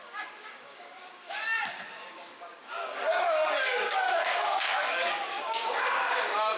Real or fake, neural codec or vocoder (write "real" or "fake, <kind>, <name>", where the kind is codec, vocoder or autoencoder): fake, codec, DAC